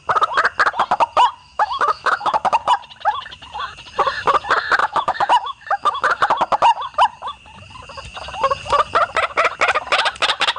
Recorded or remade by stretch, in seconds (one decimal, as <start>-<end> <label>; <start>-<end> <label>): 0.0-1.4 recorded; 1.4-2.7 remade; 2.7-4.8 recorded; 4.8-6.2 remade; 6.2-10.6 recorded